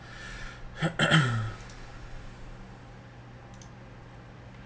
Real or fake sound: real